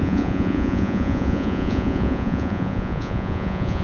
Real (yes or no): no